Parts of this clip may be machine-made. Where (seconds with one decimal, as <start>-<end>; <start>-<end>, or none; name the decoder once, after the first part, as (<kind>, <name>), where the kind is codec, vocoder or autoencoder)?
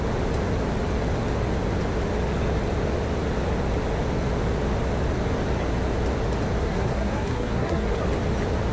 6.6-8.0 (codec, SNAC)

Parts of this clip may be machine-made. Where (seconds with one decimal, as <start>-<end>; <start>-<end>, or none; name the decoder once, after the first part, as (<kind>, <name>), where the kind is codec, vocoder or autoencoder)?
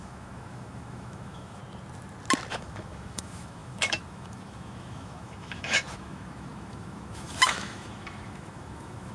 0.0-1.6 (autoencoder, DAC-VAE); 2.5-9.1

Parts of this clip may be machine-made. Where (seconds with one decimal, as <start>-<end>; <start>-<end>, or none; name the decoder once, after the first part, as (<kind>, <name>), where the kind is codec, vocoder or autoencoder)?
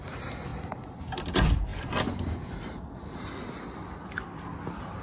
none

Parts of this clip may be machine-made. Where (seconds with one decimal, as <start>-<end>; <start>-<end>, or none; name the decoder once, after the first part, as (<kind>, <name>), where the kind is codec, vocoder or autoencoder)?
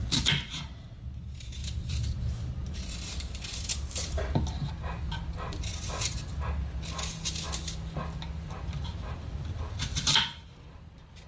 1.6-2.5 (vocoder, BigVGAN v2)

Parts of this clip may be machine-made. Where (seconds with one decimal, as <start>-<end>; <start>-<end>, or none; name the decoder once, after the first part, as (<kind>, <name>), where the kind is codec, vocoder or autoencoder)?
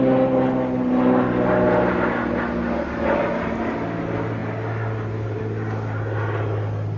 none